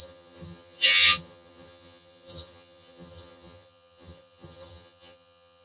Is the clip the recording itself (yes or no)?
no